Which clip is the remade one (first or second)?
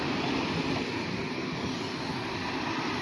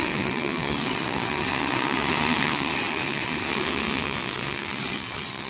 second